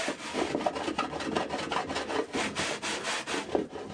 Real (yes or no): yes